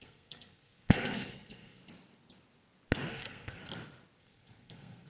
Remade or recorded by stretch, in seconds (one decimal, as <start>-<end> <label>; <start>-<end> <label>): 0.0-1.8 remade; 1.8-3.1 recorded; 3.1-3.6 remade; 3.6-4.2 recorded; 4.2-5.1 remade